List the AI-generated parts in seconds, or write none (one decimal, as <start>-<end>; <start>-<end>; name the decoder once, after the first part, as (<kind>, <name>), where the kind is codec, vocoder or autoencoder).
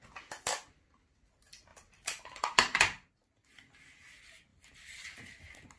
1.7-2.8 (vocoder, BigVGAN v2)